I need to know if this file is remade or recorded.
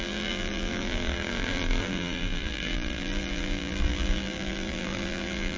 remade